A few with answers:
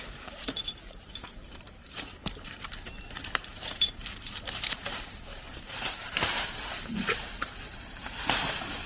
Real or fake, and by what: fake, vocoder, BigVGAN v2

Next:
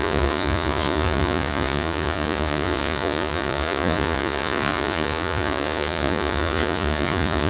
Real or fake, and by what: fake, vocoder, Vocos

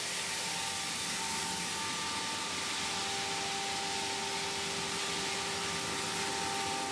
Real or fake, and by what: real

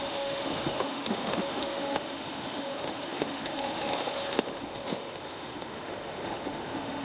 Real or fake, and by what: fake, autoencoder, DAC-VAE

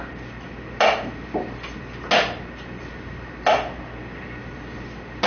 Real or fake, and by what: real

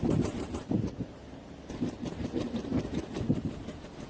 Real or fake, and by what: fake, vocoder, BigVGAN v2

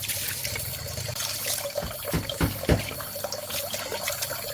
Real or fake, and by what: real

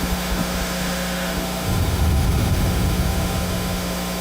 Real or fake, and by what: fake, autoencoder, DAC-VAE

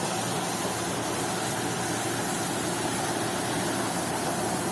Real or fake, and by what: real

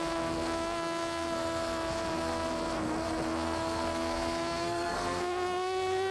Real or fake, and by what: fake, codec, SNAC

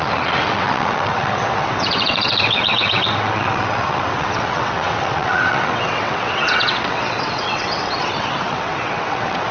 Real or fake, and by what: fake, vocoder, WaveNeXt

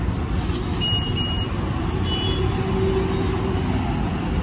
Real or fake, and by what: real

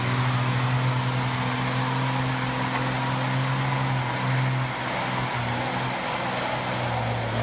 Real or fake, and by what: real